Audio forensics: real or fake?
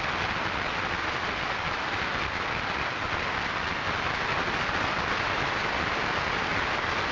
real